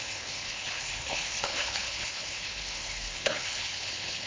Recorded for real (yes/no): no